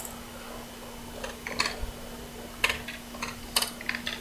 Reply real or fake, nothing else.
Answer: real